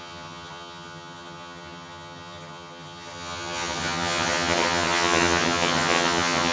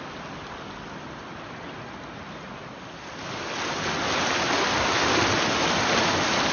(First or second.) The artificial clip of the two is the first